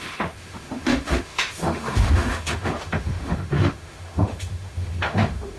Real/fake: fake